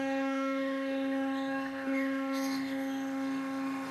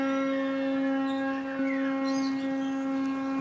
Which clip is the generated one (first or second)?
first